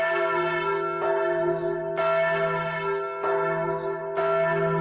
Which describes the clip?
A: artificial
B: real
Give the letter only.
B